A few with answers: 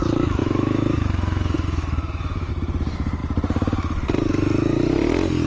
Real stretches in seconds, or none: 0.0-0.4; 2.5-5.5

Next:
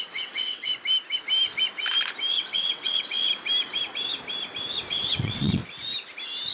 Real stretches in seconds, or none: 0.7-2.3; 3.3-4.9; 5.6-6.5

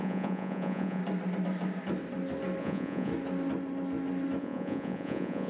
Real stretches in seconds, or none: 1.0-2.6; 3.1-4.4

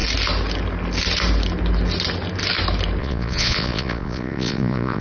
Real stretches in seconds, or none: 0.0-3.0

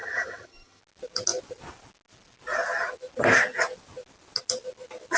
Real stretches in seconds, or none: 0.8-5.2

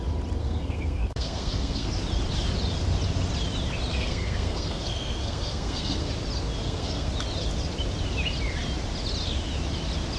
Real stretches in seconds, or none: 0.0-0.4; 1.9-3.9; 6.1-6.6; 7.1-10.2

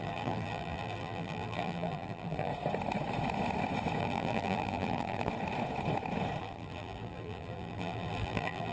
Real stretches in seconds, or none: 2.5-4.0; 5.3-6.4